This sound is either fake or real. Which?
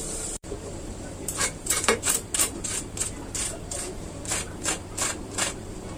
fake